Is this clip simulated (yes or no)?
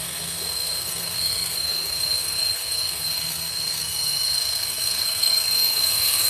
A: yes